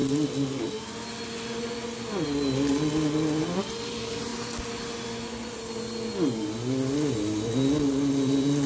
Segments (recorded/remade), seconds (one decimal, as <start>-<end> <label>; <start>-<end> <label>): 0.0-8.7 recorded